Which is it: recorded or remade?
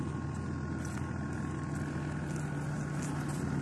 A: recorded